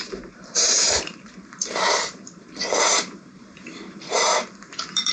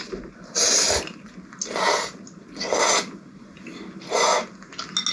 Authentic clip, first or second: second